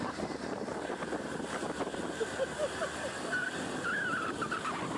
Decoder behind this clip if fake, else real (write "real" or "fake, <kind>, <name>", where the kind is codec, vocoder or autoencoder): real